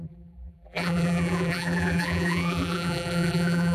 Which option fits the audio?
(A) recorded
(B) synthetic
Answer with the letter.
B